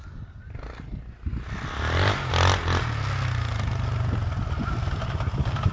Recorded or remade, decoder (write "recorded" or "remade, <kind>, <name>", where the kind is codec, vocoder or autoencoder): recorded